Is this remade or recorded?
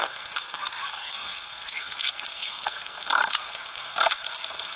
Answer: remade